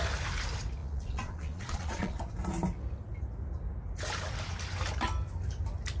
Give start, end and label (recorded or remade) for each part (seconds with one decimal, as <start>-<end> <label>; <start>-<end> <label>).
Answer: 0.0-0.8 recorded; 0.8-2.2 remade; 2.2-6.0 recorded